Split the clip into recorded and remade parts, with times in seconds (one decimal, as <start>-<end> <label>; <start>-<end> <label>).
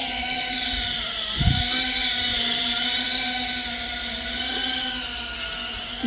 0.0-1.6 remade; 1.6-2.3 recorded; 2.3-4.4 remade; 4.4-6.1 recorded